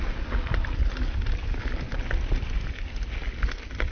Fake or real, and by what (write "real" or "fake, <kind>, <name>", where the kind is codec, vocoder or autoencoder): real